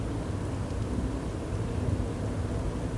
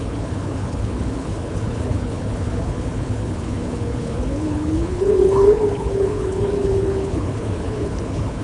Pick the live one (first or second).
first